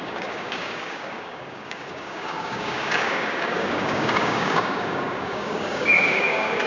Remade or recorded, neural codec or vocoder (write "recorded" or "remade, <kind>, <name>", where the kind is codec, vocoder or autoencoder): remade, codec, DAC